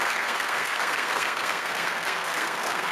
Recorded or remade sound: remade